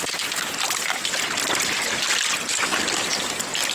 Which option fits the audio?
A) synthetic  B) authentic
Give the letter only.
B